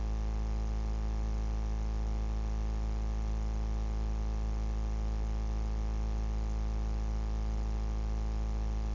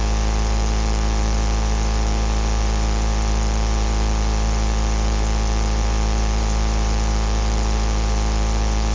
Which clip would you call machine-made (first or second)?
second